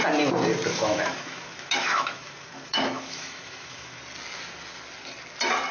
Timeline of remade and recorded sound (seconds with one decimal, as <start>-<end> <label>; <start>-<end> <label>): 0.0-0.7 recorded; 0.7-4.0 remade; 4.0-5.7 recorded